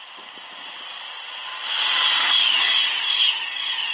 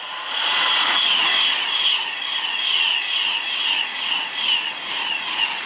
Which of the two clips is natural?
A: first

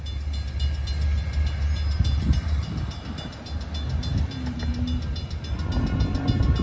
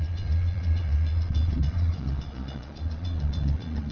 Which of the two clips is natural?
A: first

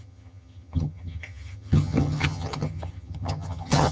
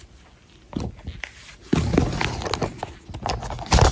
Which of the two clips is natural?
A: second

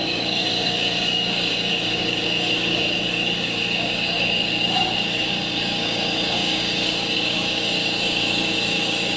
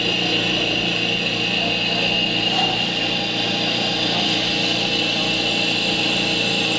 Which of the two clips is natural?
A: second